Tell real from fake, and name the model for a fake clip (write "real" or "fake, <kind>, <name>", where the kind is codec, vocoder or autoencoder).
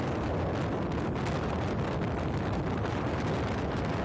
real